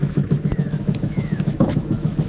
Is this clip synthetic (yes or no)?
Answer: yes